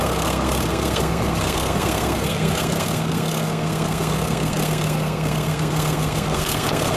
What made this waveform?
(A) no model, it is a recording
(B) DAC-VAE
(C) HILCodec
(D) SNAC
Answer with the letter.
D